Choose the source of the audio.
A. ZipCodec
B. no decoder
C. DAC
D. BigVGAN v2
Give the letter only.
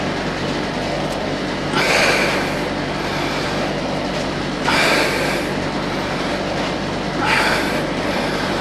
D